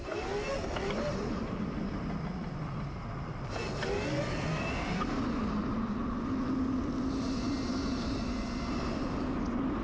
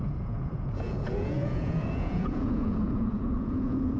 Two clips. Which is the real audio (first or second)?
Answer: first